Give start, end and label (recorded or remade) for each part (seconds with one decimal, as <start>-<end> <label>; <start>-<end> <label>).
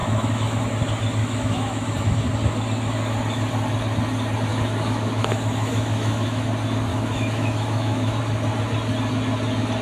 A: 0.0-0.6 remade; 0.6-1.2 recorded; 1.2-1.9 remade; 1.9-4.5 recorded; 4.5-6.5 remade; 6.5-6.9 recorded; 6.9-8.2 remade; 8.2-9.8 recorded